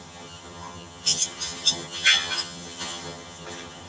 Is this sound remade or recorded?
remade